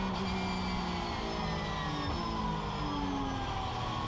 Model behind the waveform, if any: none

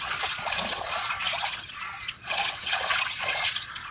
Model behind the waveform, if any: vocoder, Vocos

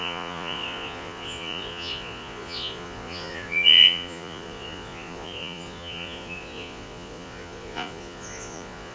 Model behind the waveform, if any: vocoder, Vocos